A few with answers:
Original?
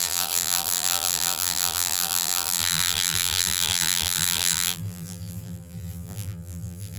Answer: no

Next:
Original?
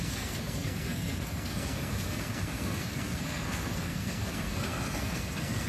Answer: no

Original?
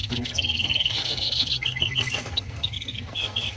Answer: no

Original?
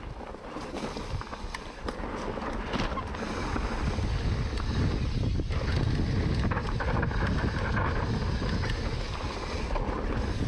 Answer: yes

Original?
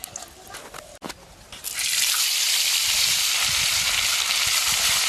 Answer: yes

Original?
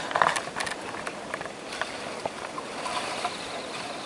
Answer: no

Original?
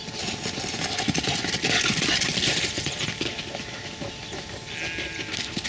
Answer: yes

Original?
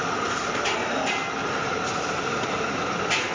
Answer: yes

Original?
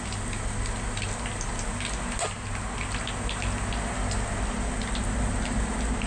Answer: yes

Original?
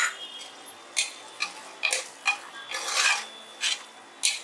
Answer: yes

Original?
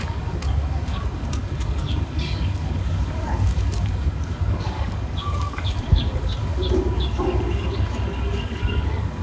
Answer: no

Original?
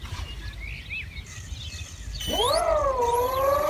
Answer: yes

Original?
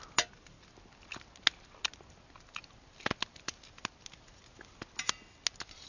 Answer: yes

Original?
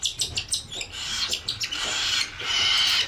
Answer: yes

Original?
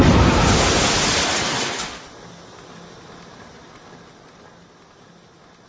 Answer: yes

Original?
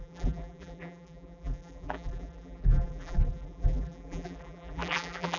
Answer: no